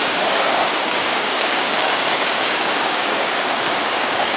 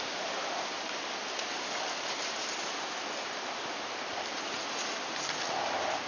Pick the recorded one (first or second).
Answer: second